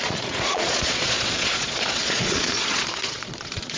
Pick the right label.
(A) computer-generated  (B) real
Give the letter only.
A